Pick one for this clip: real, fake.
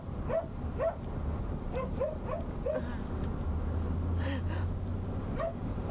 real